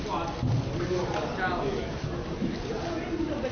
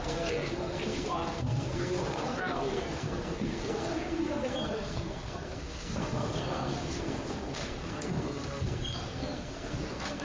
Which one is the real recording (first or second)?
first